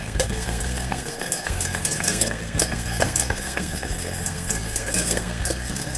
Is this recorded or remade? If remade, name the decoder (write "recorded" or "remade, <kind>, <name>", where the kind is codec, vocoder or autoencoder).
remade, codec, SNAC